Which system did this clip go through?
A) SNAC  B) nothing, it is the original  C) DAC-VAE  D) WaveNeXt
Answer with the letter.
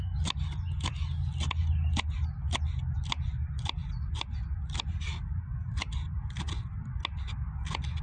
B